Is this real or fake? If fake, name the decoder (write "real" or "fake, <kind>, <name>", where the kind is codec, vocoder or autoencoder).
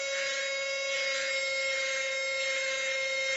real